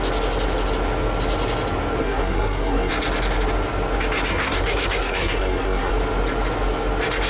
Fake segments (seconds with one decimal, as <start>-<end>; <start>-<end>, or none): 2.0-2.9; 4.3-5.9